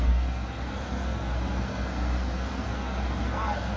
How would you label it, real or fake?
fake